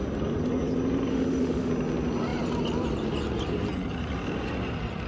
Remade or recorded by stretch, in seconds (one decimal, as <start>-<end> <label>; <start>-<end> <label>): 0.0-1.1 recorded; 1.1-1.7 remade; 1.7-5.1 recorded